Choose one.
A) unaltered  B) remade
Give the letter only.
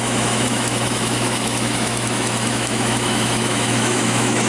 B